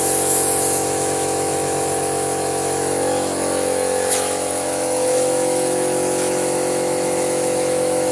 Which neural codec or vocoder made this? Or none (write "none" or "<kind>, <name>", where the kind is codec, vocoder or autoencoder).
autoencoder, DAC-VAE